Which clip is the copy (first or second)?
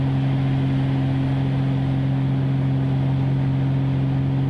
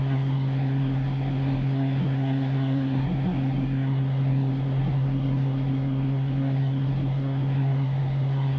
second